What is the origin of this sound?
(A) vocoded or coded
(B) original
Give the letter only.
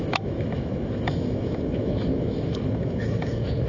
A